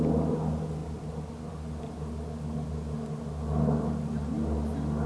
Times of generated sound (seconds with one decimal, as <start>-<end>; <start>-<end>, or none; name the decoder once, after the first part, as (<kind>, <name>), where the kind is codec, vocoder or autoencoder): none